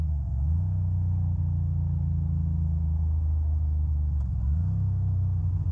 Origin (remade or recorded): recorded